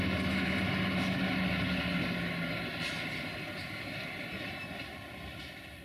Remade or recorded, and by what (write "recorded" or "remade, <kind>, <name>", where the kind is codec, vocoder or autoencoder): recorded